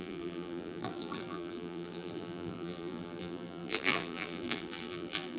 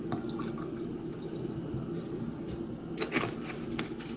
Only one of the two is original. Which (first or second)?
second